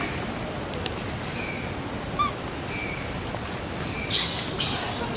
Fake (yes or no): no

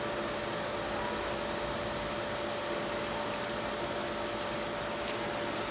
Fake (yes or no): no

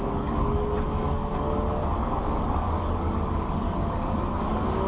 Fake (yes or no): yes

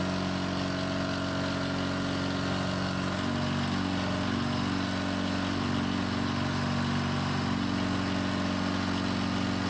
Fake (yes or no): no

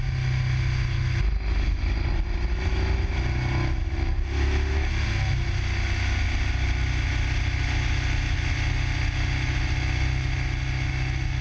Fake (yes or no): no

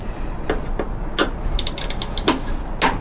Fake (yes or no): no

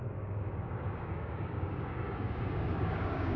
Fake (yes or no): yes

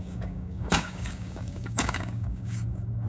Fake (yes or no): yes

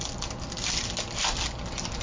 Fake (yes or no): no